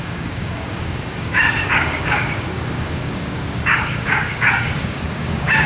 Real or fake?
fake